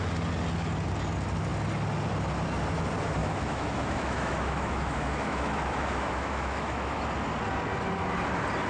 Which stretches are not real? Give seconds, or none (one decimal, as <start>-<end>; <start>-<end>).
3.2-7.0